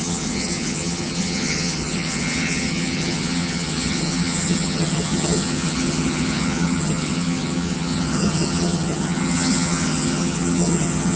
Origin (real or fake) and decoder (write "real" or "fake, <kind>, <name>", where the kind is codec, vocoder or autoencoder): fake, vocoder, HiFi-GAN